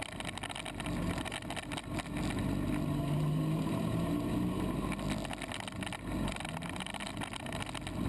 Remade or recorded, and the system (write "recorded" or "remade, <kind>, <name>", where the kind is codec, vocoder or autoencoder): recorded